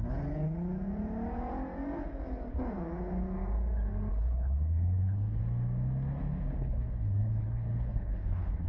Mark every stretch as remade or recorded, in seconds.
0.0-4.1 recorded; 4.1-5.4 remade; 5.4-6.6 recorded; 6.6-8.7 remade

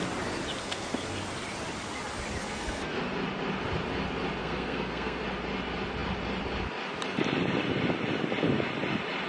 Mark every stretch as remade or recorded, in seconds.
0.0-0.6 recorded; 0.6-1.2 remade; 1.2-2.4 recorded; 2.4-3.0 remade; 3.0-4.4 recorded; 4.4-5.2 remade; 5.2-9.3 recorded

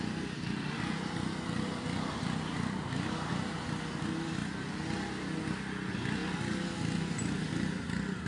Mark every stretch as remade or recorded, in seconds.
0.0-8.3 recorded

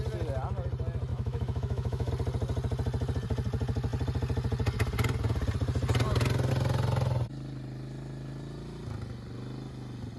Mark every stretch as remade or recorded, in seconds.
0.0-1.1 recorded; 1.1-2.1 remade; 2.1-10.2 recorded

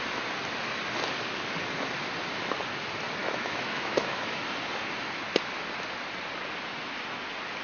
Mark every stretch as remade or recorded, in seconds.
0.0-3.2 recorded; 3.2-4.4 remade; 4.4-7.6 recorded

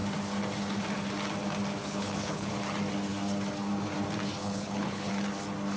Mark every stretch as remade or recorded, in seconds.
0.0-1.8 recorded; 1.8-2.5 remade; 2.5-4.4 recorded; 4.4-5.1 remade; 5.1-5.8 recorded

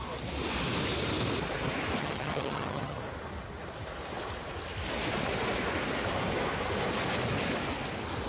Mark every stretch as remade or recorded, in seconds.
0.0-2.0 recorded; 2.0-3.0 remade; 3.0-8.3 recorded

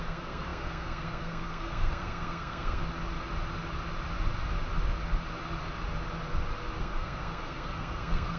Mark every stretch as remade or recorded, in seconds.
0.0-2.8 remade; 2.8-6.8 recorded; 6.8-8.4 remade